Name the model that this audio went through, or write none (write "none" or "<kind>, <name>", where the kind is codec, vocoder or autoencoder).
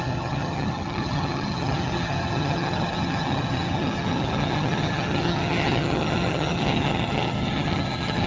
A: vocoder, HiFi-GAN